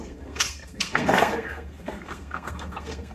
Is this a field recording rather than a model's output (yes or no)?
no